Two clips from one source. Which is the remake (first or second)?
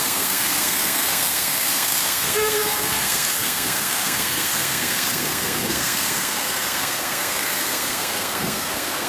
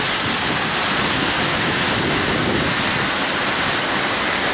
first